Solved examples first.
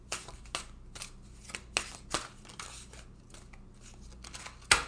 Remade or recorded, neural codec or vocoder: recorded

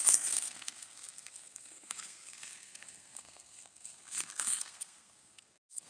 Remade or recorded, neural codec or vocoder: remade, codec, SNAC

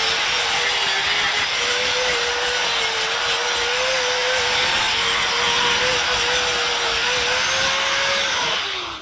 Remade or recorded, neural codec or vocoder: recorded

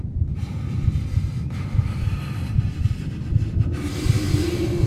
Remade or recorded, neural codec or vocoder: recorded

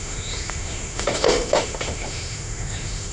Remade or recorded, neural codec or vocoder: remade, autoencoder, DAC-VAE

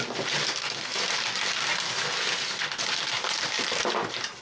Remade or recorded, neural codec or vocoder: recorded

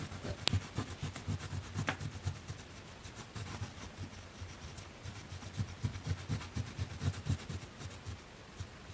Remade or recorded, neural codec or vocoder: recorded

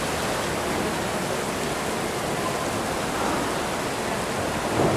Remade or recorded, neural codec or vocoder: recorded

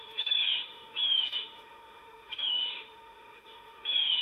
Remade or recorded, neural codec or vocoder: remade, autoencoder, DAC-VAE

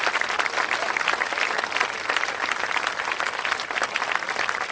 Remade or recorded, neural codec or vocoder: recorded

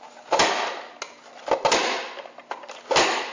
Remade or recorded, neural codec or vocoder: recorded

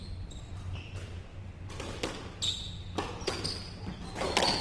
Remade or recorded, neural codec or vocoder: recorded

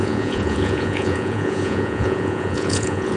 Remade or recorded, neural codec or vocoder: remade, vocoder, Vocos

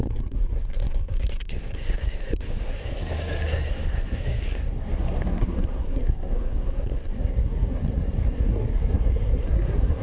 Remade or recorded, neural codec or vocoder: remade, codec, SNAC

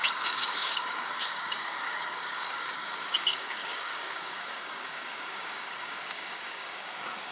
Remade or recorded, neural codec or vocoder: remade, codec, DAC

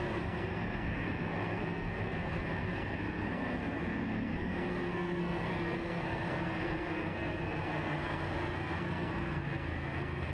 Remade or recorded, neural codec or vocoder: remade, codec, SNAC